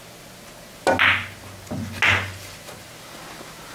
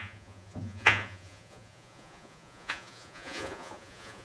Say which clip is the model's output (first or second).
second